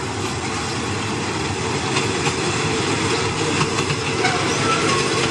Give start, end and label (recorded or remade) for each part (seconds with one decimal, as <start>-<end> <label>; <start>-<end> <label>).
0.0-5.3 recorded